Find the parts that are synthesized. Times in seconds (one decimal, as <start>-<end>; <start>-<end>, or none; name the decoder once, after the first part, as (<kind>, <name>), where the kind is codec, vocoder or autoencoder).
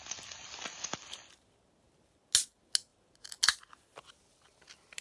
none